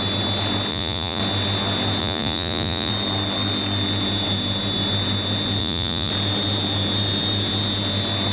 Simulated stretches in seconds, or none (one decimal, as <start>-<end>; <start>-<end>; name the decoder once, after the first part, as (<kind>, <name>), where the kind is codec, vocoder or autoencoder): 0.7-1.2 (vocoder, Vocos); 2.0-2.9; 5.6-6.1